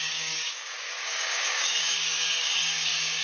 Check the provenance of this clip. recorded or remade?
remade